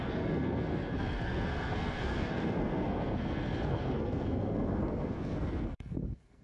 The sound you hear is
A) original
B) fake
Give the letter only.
B